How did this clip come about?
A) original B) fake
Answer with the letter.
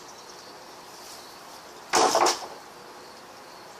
A